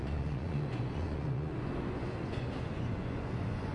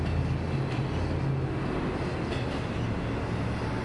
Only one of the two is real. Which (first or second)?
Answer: second